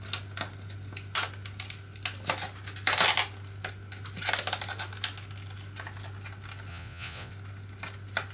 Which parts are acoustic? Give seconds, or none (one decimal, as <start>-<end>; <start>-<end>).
0.0-6.7; 7.3-8.3